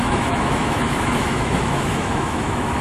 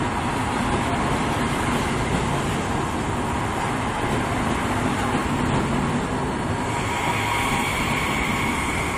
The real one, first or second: second